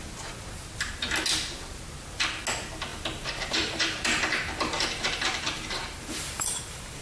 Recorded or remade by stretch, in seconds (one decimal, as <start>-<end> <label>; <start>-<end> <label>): 0.0-2.9 recorded; 2.9-7.0 remade